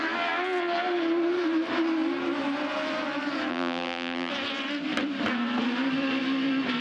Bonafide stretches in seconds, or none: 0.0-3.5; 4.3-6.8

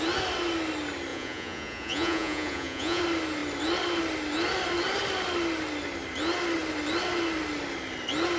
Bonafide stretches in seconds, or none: 0.0-1.1; 3.0-8.4

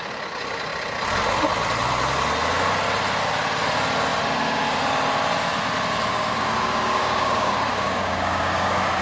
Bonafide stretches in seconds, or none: 0.0-6.1